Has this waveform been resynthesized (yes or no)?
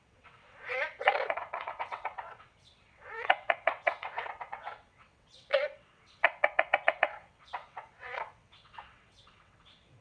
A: yes